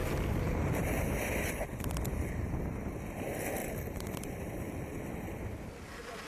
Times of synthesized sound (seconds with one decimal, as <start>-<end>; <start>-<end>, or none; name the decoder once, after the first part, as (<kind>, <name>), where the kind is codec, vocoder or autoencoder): 0.0-1.6 (vocoder, BigVGAN v2); 3.6-5.0